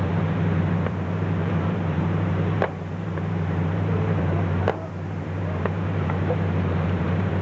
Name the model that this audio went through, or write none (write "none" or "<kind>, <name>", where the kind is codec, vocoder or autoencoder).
vocoder, BigVGAN v2